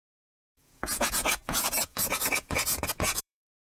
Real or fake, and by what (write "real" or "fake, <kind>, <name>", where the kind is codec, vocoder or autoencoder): fake, vocoder, Vocos